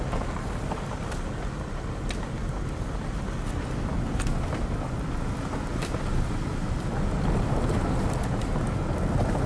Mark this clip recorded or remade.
recorded